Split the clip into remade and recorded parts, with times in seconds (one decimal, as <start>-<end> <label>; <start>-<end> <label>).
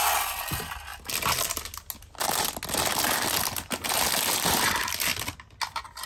0.0-6.1 recorded